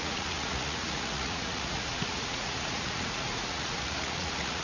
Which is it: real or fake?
fake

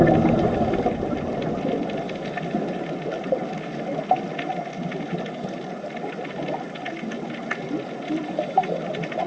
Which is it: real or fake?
real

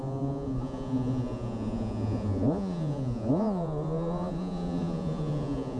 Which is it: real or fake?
fake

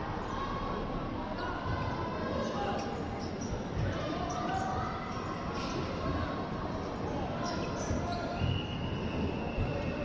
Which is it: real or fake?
real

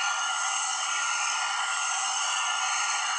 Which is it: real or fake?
real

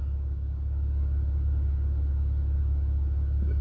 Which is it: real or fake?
real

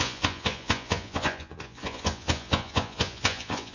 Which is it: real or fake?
fake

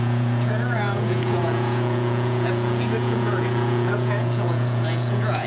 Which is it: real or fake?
fake